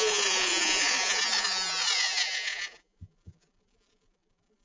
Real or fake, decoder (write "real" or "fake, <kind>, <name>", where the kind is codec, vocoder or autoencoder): fake, vocoder, Vocos